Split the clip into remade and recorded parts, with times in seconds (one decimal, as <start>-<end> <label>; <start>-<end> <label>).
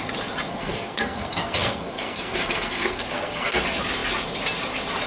0.0-0.5 recorded; 0.5-3.6 remade; 3.6-5.1 recorded